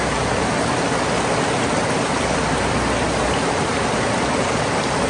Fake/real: real